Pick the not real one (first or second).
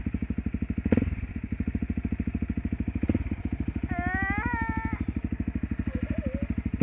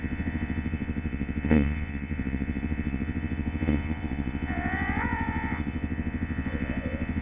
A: second